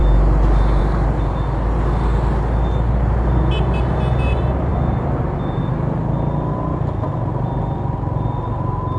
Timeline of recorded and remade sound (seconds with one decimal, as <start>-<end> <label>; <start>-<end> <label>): 0.0-4.7 recorded; 4.7-5.6 remade; 5.6-9.0 recorded